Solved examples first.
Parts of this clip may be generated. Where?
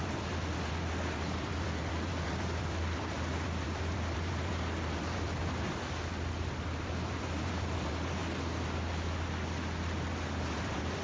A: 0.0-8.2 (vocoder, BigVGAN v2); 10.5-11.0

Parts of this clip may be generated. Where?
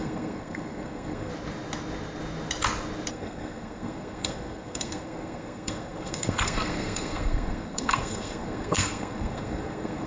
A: 0.0-1.3 (codec, SNAC); 3.1-10.1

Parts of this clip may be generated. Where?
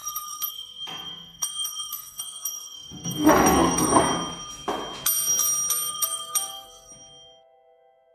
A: 0.0-4.0 (codec, SNAC); 5.9-6.9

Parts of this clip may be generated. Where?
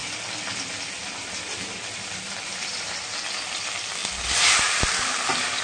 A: 0.0-2.5 (vocoder, BigVGAN v2); 4.0-5.6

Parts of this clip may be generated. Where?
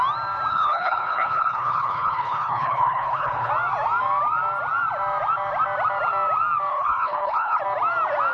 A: 0.5-3.5 (codec, HILCodec); 6.7-7.6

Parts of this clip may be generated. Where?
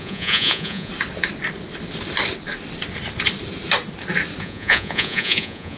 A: 0.0-0.9 (vocoder, Vocos); 4.4-5.8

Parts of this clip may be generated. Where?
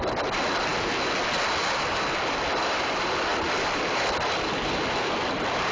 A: none